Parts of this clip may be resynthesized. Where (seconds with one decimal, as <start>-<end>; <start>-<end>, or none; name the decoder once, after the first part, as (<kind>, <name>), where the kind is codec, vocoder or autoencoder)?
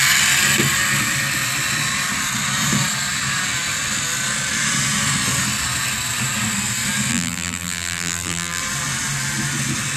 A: 7.1-8.6 (vocoder, BigVGAN v2)